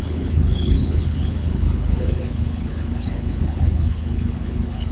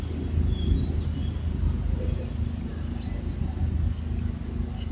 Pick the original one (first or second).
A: second